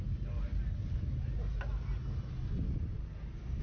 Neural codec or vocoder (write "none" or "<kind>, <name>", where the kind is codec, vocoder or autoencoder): none